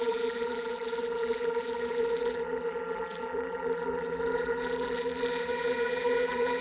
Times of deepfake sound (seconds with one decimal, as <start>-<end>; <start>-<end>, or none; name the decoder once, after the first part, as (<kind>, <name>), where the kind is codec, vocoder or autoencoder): 0.0-6.6 (vocoder, BigVGAN v2)